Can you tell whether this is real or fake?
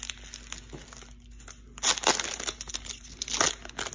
real